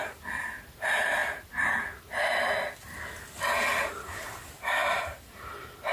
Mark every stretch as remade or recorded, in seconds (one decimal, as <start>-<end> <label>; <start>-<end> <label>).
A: 0.0-5.9 recorded